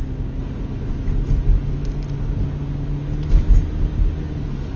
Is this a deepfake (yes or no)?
no